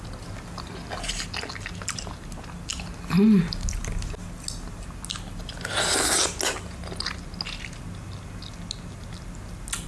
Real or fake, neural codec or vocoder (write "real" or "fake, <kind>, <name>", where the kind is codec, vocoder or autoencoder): real